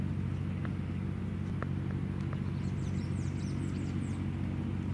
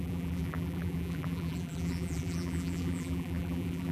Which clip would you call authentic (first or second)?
first